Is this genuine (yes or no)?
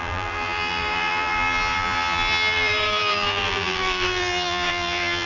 no